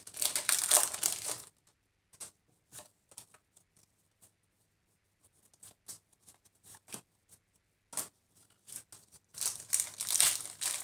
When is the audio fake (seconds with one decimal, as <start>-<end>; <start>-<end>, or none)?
none